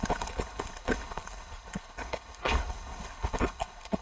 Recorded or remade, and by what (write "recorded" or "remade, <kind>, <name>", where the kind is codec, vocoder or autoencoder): remade, codec, HILCodec